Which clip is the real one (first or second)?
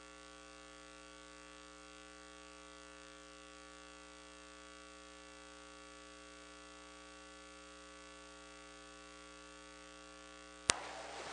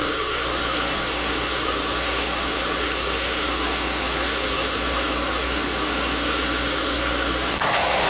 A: first